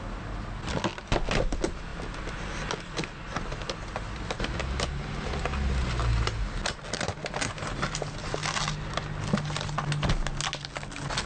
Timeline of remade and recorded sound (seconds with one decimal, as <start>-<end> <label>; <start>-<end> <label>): 0.0-11.3 recorded